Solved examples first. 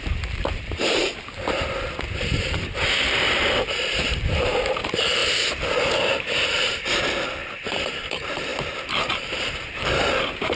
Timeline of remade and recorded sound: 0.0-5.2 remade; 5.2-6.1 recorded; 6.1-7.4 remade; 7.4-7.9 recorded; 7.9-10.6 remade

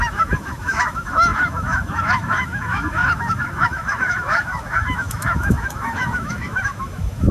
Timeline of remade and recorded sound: 0.0-7.3 remade

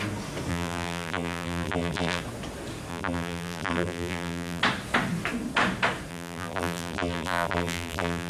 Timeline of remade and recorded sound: 0.0-0.5 recorded; 0.5-2.2 remade; 2.2-2.9 recorded; 2.9-4.6 remade; 4.6-6.1 recorded; 6.1-8.3 remade

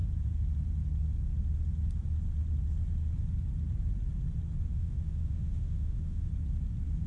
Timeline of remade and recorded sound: 0.0-4.7 recorded; 4.7-6.3 remade; 6.3-7.1 recorded